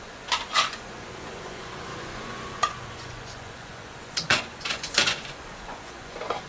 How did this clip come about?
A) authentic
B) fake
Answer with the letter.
B